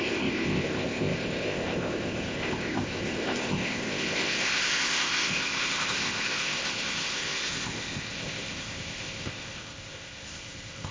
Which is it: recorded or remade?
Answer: remade